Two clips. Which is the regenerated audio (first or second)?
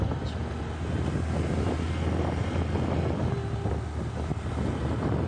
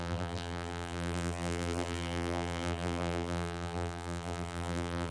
second